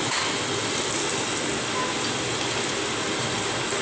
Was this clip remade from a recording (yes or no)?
no